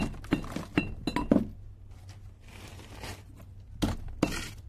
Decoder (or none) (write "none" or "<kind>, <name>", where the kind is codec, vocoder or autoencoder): none